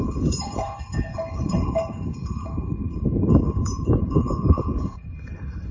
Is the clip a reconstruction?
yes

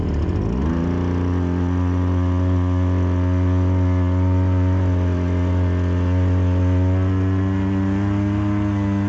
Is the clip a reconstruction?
no